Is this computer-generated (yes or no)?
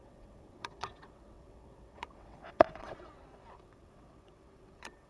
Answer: yes